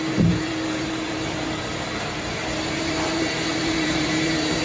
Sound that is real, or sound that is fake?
fake